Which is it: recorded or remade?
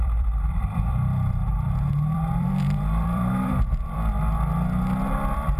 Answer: remade